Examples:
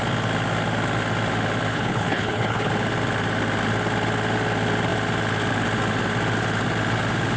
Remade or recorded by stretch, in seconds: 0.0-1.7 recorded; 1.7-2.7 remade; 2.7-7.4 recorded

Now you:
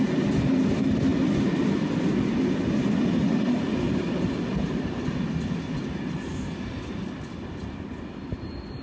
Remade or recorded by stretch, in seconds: 0.0-8.8 recorded